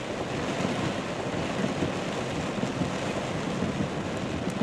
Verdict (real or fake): real